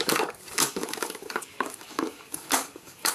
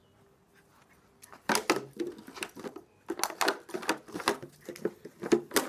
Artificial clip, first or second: first